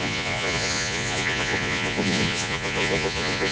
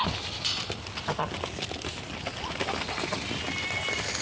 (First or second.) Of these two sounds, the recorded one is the second